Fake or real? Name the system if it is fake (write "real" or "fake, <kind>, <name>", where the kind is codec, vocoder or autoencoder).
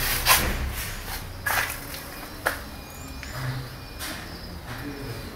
real